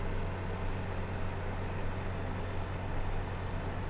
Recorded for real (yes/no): yes